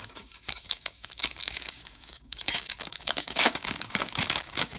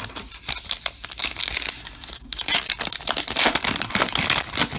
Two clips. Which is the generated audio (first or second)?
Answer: first